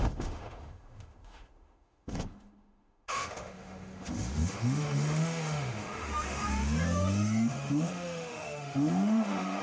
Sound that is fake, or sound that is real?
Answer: fake